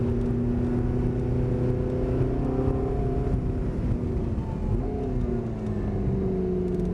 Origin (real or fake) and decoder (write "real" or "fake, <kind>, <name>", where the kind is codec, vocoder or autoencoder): real